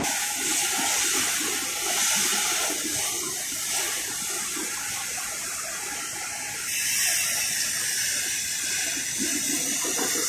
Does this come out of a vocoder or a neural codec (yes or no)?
no